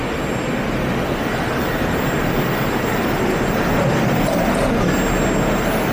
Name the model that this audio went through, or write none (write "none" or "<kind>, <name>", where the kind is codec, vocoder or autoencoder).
none